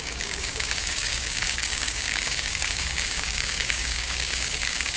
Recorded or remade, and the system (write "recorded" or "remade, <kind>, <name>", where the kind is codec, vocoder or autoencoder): remade, codec, DAC